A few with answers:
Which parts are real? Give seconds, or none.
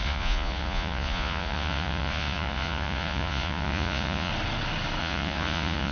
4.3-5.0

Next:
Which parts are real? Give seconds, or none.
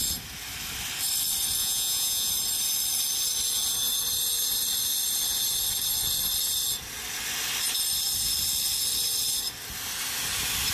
0.0-1.6; 2.3-10.7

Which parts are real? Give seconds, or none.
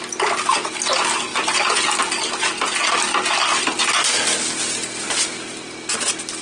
0.0-6.4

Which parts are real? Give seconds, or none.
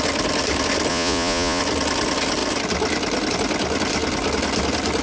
0.0-0.9; 1.6-5.0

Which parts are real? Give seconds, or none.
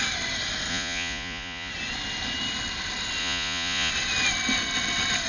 0.0-0.7; 1.7-3.2; 3.9-5.3